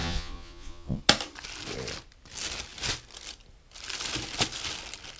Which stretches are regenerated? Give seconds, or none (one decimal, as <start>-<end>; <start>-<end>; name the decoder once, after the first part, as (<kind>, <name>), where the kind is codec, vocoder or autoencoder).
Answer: 0.0-1.0 (vocoder, Vocos)